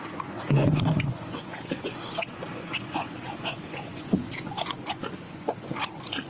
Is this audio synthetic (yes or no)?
yes